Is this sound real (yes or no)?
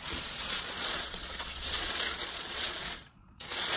no